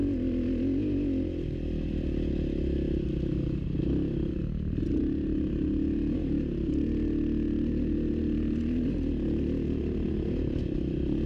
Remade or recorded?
recorded